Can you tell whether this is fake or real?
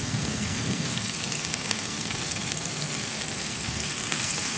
fake